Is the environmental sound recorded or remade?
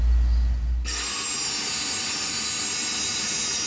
recorded